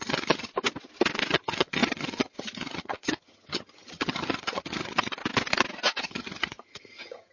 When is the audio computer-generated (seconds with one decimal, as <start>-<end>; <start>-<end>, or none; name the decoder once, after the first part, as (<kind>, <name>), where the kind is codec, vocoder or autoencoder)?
0.0-0.5 (vocoder, HiFi-GAN); 1.3-5.2; 6.0-7.3